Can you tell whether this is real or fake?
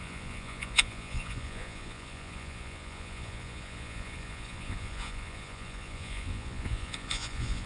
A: fake